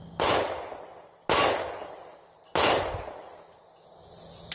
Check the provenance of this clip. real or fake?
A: real